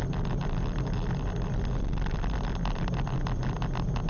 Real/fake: real